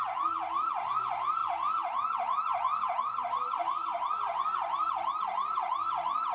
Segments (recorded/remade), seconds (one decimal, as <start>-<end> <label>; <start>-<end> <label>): 0.0-6.3 recorded